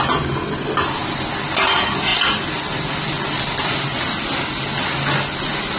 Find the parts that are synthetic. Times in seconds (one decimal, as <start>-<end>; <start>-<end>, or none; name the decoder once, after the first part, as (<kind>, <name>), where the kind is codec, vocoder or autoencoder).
none